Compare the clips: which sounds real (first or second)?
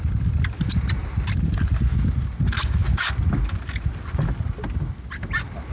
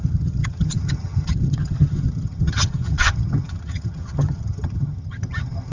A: first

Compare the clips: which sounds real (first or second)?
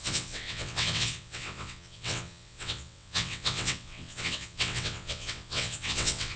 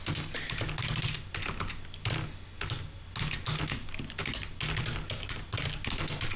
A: second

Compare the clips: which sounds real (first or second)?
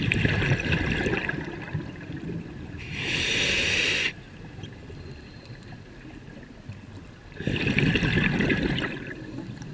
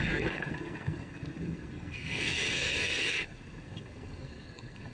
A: first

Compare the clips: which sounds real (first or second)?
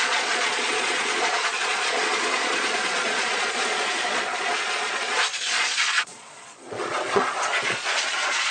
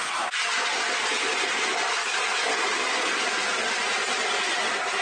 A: second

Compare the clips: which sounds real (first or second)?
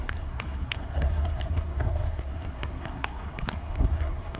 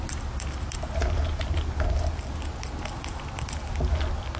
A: second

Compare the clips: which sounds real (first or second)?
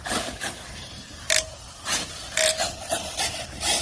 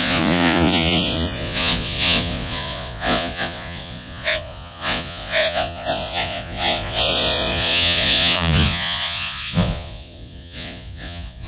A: first